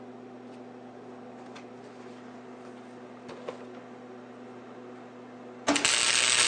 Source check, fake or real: real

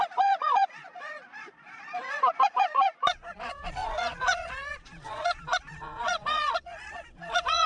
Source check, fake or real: fake